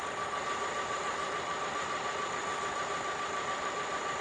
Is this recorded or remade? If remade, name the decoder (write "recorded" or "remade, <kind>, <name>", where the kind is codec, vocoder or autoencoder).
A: remade, vocoder, BigVGAN v2